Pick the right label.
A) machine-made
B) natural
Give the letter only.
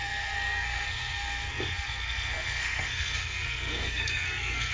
A